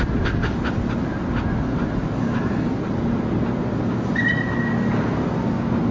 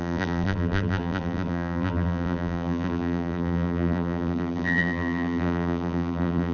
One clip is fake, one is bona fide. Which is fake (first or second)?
second